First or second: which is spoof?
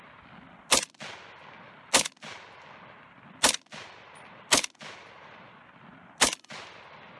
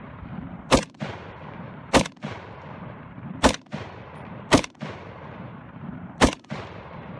second